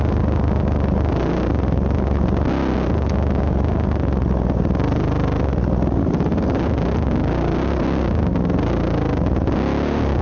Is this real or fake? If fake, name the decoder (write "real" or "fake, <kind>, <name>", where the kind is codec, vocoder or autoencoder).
real